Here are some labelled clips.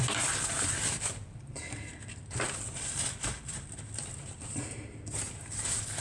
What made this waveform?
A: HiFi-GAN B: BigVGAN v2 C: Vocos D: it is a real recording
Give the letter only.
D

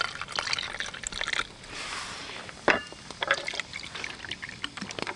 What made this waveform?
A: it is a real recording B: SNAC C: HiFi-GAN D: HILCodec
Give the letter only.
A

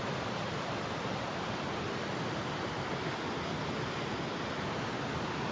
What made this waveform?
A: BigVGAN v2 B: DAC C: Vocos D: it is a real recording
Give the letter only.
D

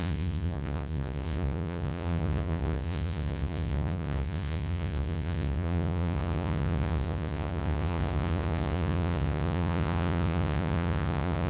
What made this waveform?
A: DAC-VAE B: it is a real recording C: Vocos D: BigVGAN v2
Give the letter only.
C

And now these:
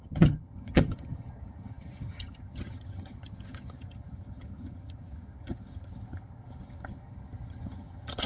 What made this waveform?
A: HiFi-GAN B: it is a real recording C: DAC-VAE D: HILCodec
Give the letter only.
A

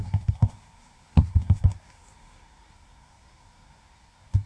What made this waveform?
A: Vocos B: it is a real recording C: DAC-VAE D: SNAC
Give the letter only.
D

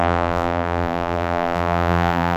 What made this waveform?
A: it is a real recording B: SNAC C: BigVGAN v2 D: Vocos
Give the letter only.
C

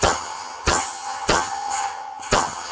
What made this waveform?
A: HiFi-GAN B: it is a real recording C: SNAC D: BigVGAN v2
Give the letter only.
A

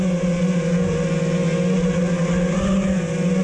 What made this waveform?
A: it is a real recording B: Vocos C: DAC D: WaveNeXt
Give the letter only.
A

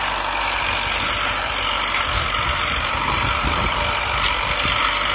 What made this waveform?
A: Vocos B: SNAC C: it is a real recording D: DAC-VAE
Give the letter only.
C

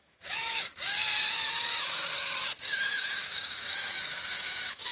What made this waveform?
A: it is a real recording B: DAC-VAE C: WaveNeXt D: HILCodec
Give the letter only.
B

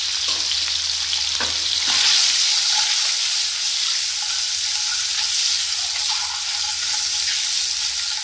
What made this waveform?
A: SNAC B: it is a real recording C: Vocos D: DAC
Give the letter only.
B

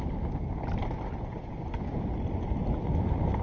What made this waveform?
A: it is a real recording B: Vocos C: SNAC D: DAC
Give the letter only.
A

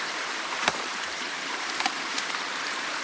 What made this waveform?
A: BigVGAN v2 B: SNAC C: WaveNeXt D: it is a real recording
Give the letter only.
A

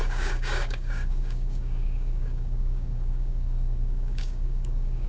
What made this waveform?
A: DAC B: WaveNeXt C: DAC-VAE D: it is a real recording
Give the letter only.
A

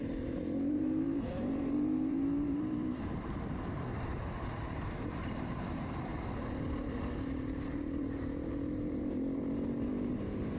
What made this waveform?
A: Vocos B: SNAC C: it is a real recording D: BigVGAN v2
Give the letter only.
D